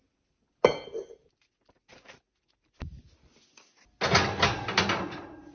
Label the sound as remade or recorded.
recorded